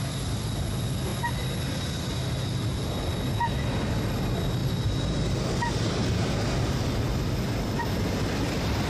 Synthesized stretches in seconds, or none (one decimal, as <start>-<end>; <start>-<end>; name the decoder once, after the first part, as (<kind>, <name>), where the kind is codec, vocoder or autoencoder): none